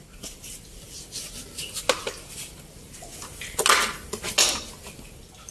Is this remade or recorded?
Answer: recorded